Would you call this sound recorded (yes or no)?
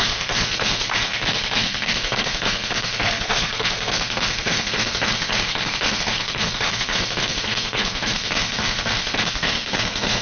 no